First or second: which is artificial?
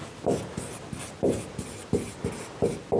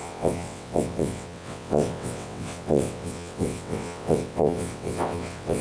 second